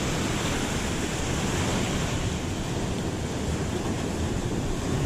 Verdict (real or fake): fake